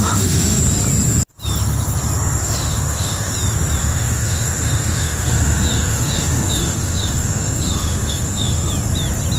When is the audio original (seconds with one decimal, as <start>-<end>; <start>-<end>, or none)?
0.6-2.4; 3.3-3.8; 8.7-9.4